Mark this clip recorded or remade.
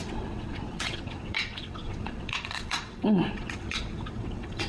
remade